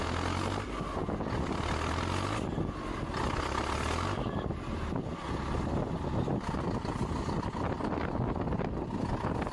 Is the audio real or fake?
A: real